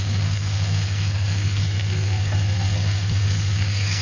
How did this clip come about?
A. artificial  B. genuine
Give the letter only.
A